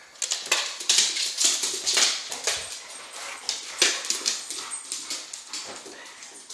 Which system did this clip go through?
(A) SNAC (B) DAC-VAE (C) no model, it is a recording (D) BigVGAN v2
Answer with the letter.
C